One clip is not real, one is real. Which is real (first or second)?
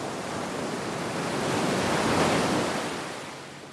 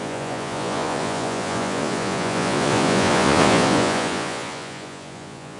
first